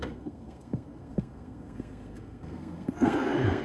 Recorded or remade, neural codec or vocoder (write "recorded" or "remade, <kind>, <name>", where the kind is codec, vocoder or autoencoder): remade, codec, SNAC